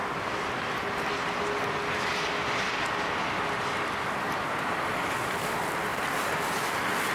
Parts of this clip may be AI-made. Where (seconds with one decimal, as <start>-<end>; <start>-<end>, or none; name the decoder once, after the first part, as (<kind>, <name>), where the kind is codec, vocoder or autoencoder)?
none